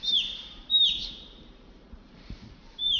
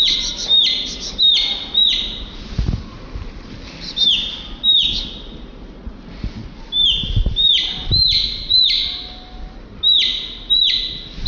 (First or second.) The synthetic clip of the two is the first